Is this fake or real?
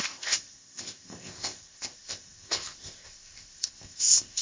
fake